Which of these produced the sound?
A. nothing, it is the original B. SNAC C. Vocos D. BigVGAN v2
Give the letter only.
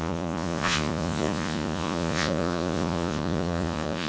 C